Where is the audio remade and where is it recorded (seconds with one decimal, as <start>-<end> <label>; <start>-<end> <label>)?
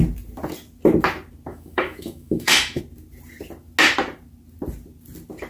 0.0-1.5 recorded; 1.5-2.8 remade; 2.8-5.5 recorded